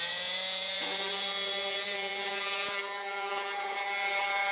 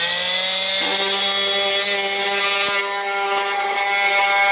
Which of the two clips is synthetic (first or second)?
first